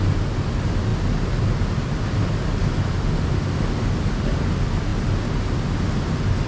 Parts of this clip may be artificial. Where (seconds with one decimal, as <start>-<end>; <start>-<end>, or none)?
none